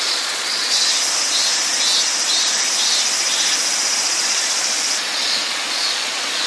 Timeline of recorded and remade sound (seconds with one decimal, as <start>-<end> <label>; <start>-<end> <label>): 0.0-0.8 remade; 0.8-4.2 recorded; 4.2-6.5 remade